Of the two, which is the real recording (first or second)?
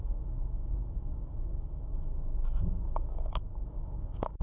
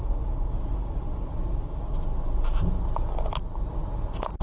second